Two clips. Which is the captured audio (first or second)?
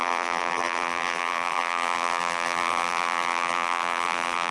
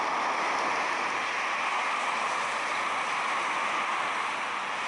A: second